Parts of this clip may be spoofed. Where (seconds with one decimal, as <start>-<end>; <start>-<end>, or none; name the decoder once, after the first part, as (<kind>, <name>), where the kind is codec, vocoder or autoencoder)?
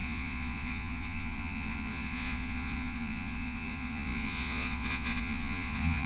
0.0-6.1 (vocoder, Vocos)